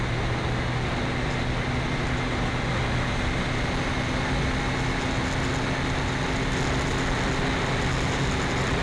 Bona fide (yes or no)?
yes